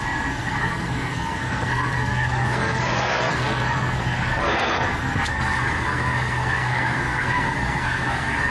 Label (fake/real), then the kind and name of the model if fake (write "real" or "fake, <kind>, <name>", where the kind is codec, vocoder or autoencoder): fake, codec, SNAC